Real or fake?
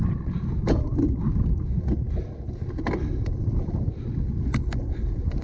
real